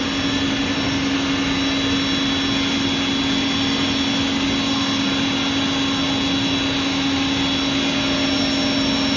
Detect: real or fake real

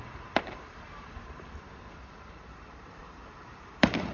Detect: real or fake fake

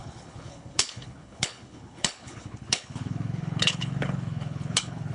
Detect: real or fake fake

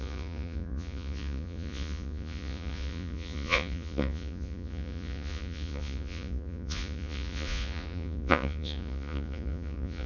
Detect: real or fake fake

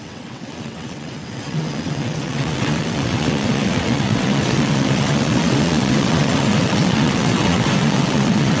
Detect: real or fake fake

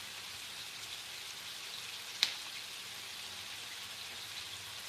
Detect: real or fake real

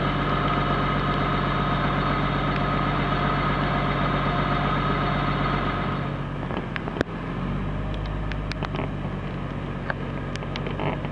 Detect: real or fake real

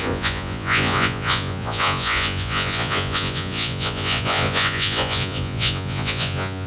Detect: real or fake fake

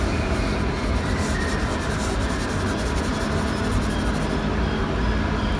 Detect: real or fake real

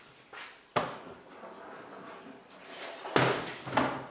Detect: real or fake real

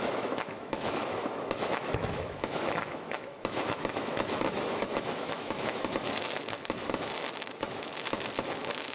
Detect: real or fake fake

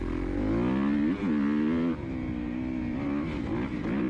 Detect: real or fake real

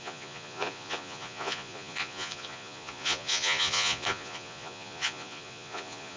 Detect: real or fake fake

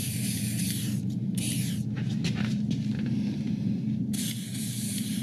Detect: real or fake fake